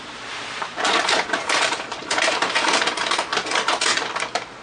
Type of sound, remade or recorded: remade